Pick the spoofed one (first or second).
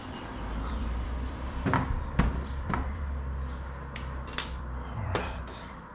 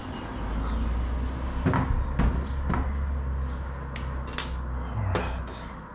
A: first